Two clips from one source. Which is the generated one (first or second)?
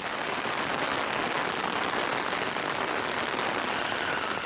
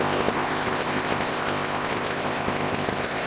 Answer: second